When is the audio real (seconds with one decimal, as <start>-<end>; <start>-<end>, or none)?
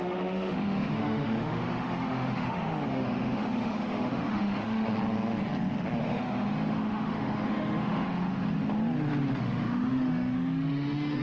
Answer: 4.9-6.0; 8.6-9.4